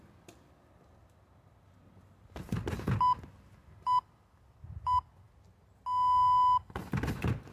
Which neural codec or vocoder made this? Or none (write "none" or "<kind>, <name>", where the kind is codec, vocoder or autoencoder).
none